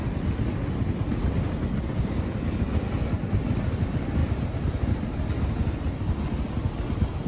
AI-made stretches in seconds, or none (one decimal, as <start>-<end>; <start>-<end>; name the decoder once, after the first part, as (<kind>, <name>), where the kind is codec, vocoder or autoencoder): none